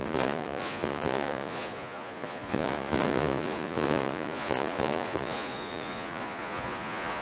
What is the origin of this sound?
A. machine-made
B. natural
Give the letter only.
A